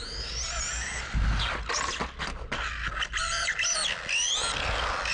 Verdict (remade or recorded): recorded